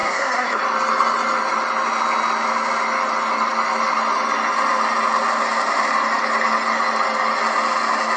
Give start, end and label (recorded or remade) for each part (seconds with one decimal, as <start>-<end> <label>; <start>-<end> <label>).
0.0-0.6 remade; 0.6-8.2 recorded